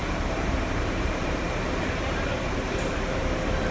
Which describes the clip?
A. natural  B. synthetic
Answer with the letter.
B